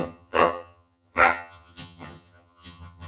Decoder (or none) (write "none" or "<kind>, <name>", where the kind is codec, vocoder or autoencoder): vocoder, HiFi-GAN